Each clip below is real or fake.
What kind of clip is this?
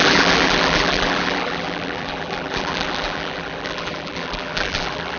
fake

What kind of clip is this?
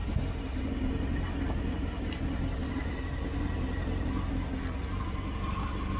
real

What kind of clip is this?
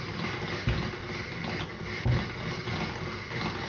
real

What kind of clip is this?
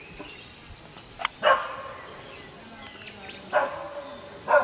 real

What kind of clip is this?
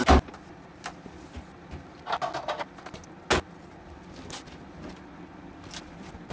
real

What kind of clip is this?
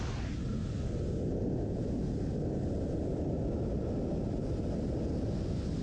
real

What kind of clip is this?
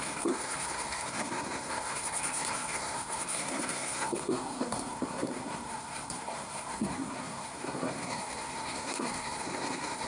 fake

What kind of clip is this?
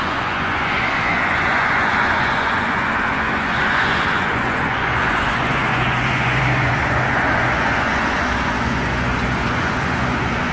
fake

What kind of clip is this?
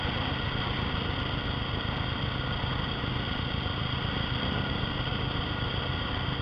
real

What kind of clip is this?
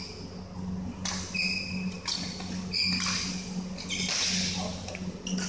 real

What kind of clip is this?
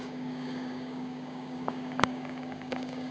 fake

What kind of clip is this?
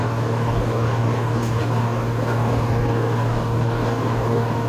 fake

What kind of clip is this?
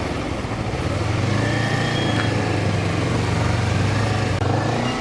real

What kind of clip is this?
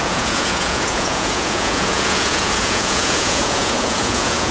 fake